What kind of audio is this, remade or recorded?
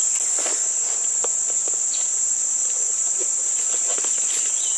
recorded